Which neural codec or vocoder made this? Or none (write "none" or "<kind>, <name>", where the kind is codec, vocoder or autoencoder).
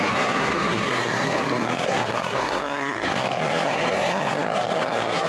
codec, SNAC